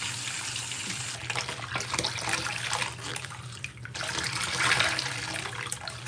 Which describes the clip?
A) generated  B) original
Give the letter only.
B